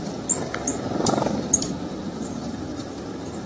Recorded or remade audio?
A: recorded